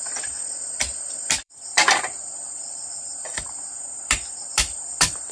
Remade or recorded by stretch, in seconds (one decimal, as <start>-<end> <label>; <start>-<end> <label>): 0.0-5.3 remade